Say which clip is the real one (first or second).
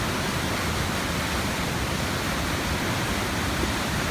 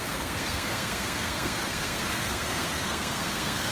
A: first